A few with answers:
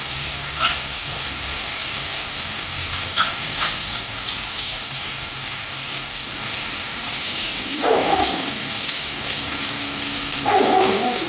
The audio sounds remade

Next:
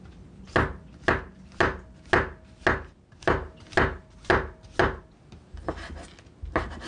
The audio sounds recorded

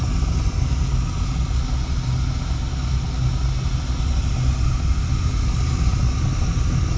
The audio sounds recorded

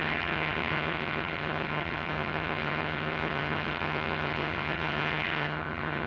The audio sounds remade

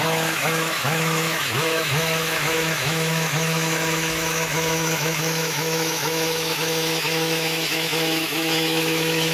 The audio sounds remade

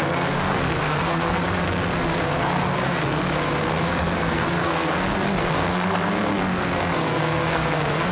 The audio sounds remade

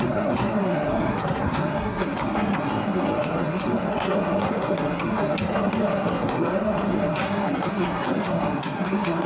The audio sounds remade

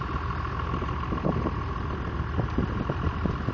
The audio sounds recorded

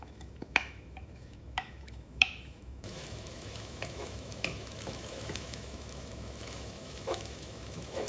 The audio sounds remade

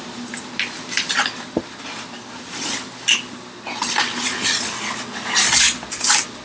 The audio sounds recorded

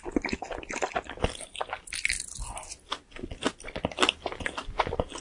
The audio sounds recorded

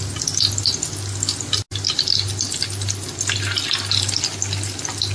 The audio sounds recorded